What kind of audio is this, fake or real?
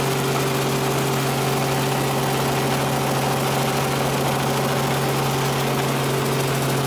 real